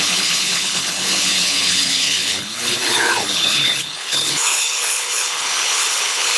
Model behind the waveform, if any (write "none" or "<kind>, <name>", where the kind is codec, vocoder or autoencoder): codec, HILCodec